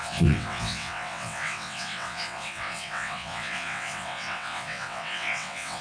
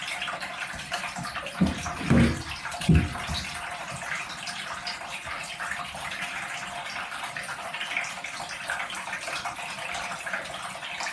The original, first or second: second